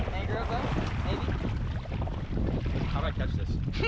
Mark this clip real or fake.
real